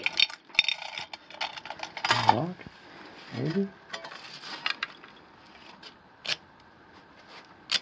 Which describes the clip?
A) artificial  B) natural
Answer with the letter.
B